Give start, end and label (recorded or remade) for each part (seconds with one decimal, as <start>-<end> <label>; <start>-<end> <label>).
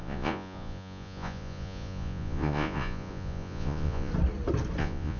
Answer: 0.0-4.1 remade; 4.1-4.8 recorded; 4.8-5.2 remade